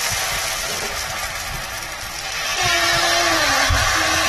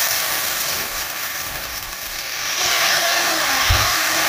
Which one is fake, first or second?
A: second